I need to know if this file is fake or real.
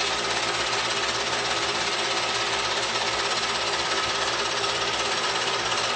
real